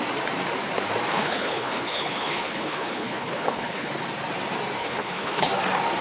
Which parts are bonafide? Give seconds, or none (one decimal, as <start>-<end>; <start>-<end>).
0.0-1.1; 3.9-4.8; 5.5-6.0